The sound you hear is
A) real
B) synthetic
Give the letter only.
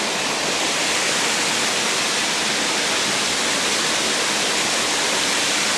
A